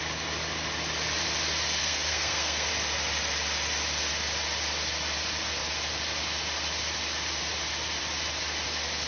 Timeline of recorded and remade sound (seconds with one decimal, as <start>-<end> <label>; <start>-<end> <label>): 0.0-1.8 recorded; 1.8-2.7 remade; 2.7-9.1 recorded